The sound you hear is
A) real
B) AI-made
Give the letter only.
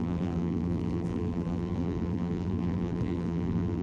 B